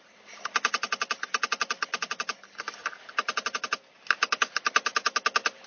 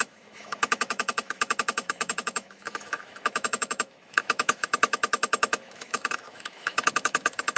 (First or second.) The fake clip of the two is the second